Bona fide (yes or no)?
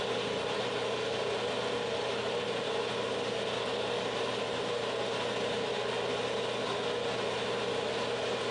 yes